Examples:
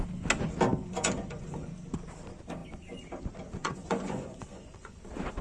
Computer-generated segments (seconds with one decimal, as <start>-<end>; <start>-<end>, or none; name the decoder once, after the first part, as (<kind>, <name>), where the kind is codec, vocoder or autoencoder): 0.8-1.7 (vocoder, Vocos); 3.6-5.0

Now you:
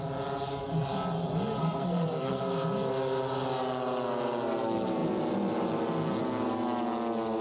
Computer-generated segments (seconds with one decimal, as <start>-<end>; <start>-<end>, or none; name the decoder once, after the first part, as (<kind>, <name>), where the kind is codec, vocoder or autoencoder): 1.6-2.4 (codec, SNAC)

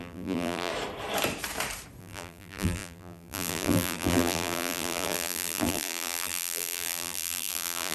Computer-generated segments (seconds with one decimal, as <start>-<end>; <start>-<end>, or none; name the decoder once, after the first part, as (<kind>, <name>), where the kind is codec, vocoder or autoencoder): 0.0-0.7 (vocoder, BigVGAN v2); 2.0-7.9

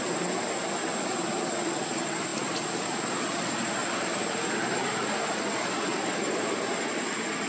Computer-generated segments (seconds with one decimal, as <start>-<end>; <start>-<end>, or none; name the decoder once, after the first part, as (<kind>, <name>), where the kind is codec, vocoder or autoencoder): 3.8-4.3 (vocoder, BigVGAN v2); 5.9-6.7